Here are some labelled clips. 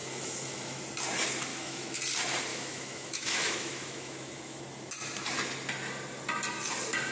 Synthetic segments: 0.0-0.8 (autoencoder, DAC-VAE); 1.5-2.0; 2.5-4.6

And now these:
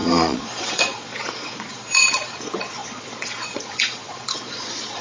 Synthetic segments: 0.0-5.0 (vocoder, Vocos)

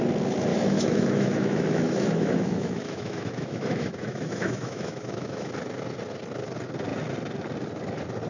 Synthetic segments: 0.5-5.5 (autoencoder, DAC-VAE)

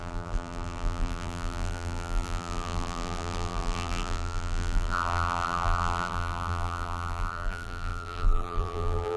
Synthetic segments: 0.0-9.2 (vocoder, BigVGAN v2)

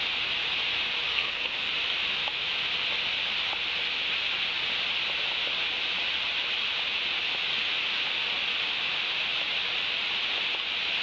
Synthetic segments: 1.1-1.7 (codec, SNAC)